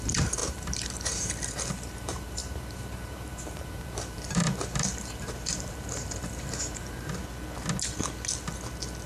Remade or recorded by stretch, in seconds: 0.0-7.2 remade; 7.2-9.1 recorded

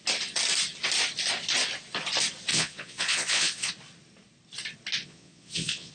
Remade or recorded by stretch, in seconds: 0.0-2.5 recorded; 2.5-3.7 remade; 3.7-5.0 recorded; 5.0-5.9 remade